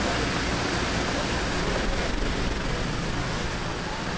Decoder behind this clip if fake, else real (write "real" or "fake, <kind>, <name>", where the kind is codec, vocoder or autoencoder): real